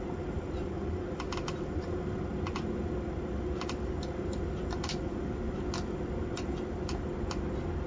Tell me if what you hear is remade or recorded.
recorded